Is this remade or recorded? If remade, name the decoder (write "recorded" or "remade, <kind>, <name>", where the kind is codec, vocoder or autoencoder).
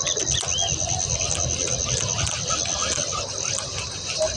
recorded